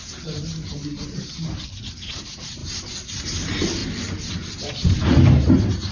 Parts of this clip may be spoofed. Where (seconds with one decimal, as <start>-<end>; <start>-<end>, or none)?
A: 0.0-1.3; 1.9-3.8; 4.3-5.9